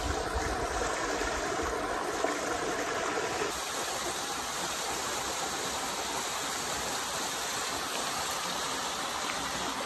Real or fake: real